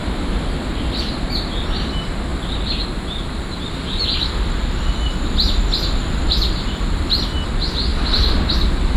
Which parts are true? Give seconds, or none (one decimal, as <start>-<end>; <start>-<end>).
0.0-9.0